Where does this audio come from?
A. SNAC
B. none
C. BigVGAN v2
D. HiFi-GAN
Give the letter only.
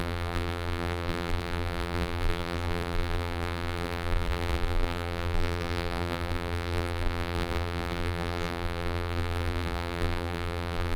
C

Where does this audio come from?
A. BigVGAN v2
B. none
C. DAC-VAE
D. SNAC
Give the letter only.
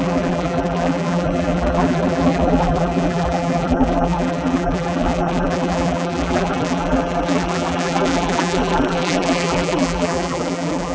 A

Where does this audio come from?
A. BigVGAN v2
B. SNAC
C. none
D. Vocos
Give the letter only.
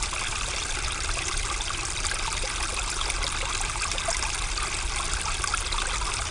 C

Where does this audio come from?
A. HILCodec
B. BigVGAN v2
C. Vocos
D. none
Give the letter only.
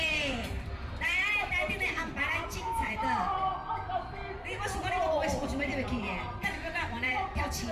B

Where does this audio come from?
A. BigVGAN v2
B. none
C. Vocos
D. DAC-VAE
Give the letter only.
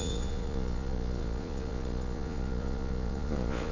C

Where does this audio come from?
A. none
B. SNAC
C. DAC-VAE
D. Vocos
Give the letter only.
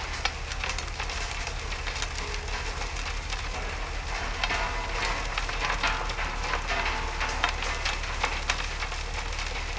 A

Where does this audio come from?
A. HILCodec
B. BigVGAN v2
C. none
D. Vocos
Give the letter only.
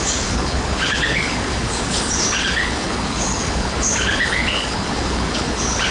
A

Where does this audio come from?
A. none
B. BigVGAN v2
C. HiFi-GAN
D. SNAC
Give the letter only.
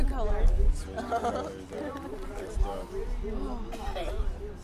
A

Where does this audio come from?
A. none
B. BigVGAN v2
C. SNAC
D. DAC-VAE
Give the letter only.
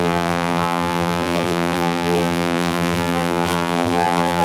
B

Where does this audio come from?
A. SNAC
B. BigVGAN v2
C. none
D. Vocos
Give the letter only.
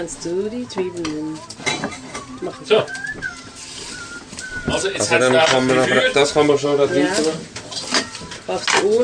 C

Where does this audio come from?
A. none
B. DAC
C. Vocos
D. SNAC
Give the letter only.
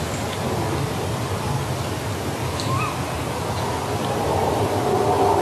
A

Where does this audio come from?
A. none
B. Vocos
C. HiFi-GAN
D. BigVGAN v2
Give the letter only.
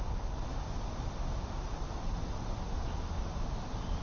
A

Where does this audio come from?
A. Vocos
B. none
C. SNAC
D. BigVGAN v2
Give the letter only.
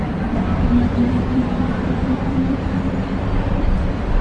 D